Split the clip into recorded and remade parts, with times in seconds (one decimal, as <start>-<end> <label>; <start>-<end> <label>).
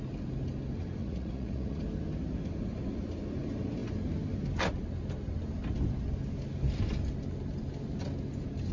0.0-1.0 recorded; 1.0-1.8 remade; 1.8-8.7 recorded